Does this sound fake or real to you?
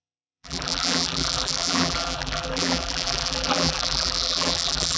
fake